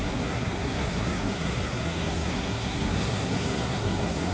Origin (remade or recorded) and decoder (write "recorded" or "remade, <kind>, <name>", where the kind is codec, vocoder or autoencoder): remade, codec, SNAC